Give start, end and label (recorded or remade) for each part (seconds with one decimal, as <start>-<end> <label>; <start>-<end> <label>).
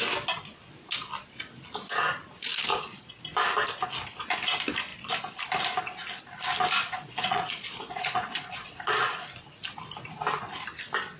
0.0-2.7 recorded; 2.7-3.2 remade; 3.2-6.8 recorded; 6.8-8.9 remade; 8.9-11.2 recorded